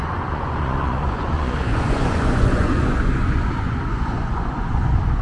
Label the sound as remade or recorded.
remade